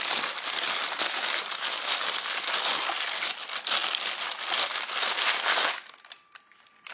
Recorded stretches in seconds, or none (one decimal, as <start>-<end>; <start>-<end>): 0.0-6.9